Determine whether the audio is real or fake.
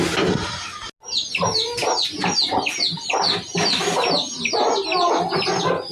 real